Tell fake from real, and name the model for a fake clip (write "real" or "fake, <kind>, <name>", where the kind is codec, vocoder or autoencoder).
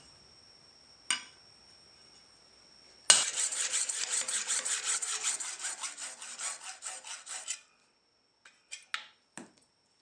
real